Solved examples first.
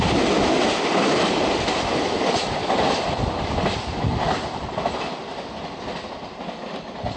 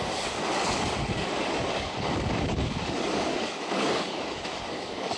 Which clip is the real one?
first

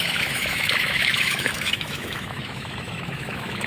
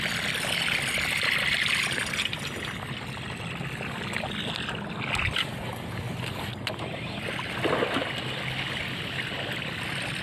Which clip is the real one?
second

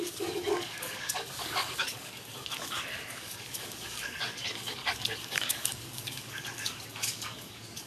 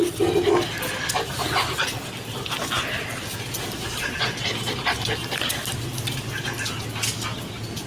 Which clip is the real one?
second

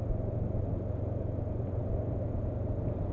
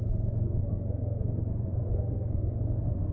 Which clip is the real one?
first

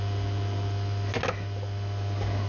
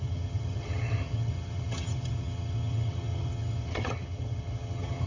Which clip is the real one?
first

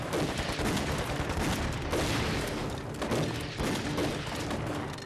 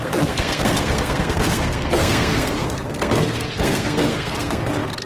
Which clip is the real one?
first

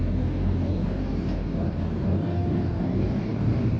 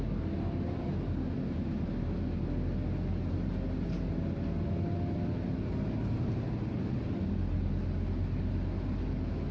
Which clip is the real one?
second